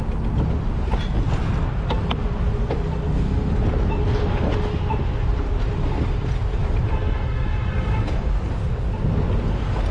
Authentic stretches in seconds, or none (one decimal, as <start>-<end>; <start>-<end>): 0.0-5.3; 8.3-9.9